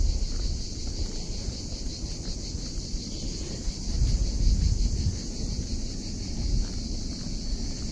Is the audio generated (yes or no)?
no